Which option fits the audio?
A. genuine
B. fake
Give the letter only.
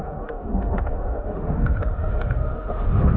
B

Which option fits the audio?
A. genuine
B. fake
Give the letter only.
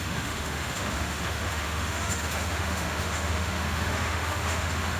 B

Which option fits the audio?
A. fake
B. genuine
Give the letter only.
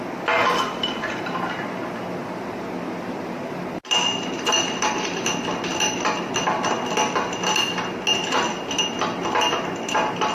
B